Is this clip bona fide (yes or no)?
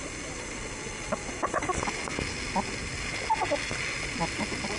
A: yes